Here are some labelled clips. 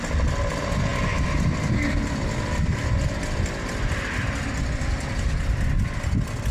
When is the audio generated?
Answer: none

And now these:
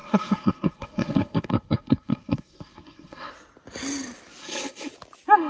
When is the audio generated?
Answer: 0.0-3.3 (codec, SNAC); 4.4-4.9

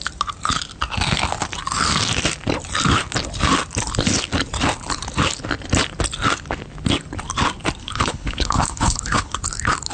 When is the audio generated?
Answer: 7.8-9.4 (codec, HILCodec)

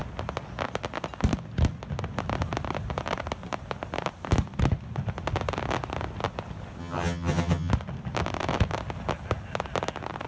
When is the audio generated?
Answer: 6.8-7.7 (vocoder, HiFi-GAN)

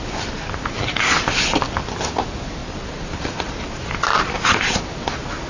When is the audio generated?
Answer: 2.6-4.7 (vocoder, BigVGAN v2)

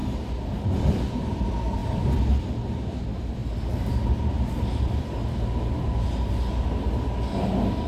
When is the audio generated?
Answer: none

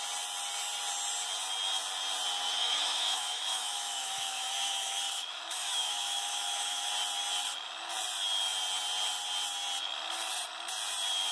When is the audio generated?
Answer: 2.6-6.9 (autoencoder, DAC-VAE)